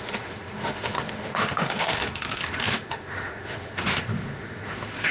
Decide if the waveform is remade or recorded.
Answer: remade